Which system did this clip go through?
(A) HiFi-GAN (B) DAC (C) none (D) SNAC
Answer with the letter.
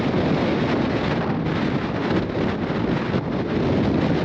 C